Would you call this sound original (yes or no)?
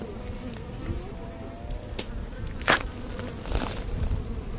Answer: yes